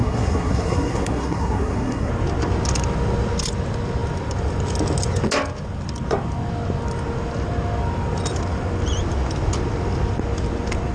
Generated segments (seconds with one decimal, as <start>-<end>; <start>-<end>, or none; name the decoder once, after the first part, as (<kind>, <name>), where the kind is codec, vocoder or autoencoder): 0.0-2.1 (codec, SNAC)

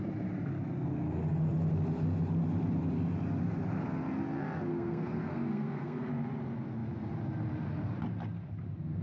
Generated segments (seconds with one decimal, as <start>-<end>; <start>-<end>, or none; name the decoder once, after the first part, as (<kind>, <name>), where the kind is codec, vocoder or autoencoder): 4.7-6.1 (codec, SNAC)

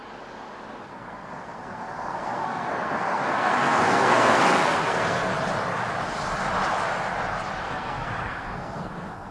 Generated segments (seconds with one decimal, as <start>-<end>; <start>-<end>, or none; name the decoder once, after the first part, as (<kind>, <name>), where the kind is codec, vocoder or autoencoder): 0.8-5.3 (codec, SNAC); 7.6-9.3

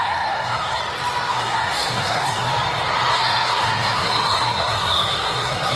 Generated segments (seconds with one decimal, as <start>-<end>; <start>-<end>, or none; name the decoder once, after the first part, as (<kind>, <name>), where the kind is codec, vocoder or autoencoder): 0.0-0.8 (codec, SNAC); 1.3-2.5; 3.1-5.8

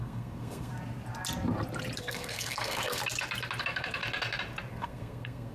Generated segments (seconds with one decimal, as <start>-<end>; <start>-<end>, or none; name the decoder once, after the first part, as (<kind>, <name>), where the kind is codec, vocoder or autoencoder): 0.0-0.7 (codec, SNAC); 2.0-3.0; 3.6-4.0; 4.7-5.5

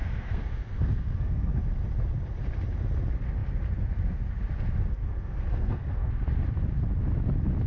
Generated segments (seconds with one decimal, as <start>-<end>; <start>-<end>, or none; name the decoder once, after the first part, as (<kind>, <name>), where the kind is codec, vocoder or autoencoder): 0.0-1.6 (codec, SNAC); 4.9-6.1